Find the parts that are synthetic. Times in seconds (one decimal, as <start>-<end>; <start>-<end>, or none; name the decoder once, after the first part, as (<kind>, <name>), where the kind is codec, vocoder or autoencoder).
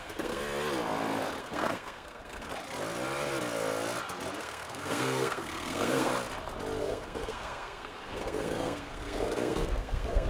0.0-0.4 (codec, SNAC); 1.4-2.5; 4.4-6.1; 6.8-10.3